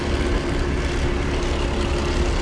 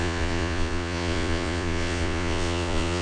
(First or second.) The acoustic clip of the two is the first